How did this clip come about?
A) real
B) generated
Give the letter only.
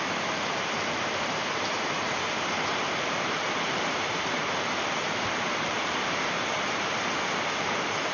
B